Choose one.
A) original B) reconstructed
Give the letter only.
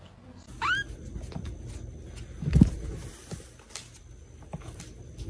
A